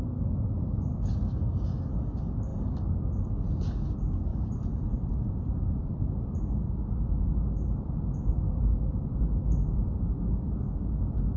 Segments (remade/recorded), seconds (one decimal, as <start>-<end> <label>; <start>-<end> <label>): 0.0-4.3 recorded; 4.3-9.2 remade; 9.2-11.4 recorded